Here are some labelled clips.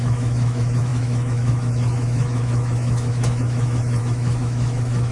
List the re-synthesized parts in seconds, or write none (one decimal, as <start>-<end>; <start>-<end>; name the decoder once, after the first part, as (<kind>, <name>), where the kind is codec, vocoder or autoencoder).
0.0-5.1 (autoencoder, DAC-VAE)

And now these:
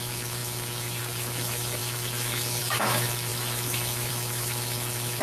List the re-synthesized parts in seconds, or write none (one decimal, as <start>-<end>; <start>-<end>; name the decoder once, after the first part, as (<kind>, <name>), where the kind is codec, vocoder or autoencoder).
0.0-5.2 (autoencoder, DAC-VAE)

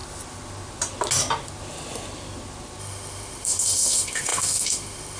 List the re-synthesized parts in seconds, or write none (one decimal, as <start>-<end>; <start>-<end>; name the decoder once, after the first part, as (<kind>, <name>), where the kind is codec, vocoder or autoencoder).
2.8-5.2 (autoencoder, DAC-VAE)

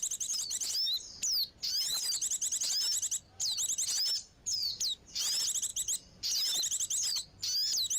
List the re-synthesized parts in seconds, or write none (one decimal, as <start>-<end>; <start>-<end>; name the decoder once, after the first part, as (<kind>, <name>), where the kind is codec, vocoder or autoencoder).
none

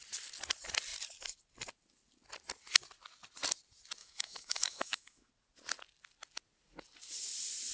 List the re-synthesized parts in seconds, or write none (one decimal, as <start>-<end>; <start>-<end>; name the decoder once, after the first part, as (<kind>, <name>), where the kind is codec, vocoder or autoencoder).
4.0-5.3 (autoencoder, DAC-VAE)

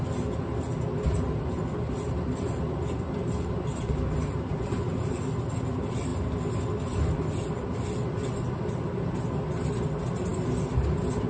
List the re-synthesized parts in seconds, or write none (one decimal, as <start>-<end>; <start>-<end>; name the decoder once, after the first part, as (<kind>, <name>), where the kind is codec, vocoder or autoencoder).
none

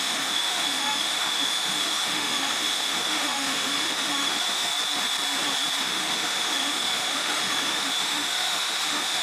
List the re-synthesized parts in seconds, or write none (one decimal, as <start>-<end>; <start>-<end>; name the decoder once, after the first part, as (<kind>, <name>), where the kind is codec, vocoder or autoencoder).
0.0-4.7 (autoencoder, DAC-VAE); 5.8-9.2

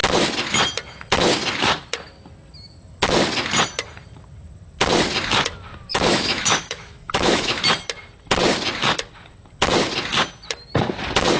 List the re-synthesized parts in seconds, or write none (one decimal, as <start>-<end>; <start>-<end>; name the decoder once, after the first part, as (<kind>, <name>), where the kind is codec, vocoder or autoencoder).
5.9-7.6 (autoencoder, DAC-VAE)